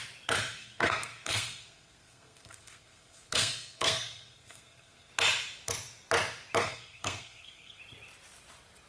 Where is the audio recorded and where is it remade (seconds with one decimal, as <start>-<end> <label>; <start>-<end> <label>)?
0.0-0.6 recorded; 0.6-5.1 remade; 5.1-6.6 recorded; 6.6-7.8 remade; 7.8-8.9 recorded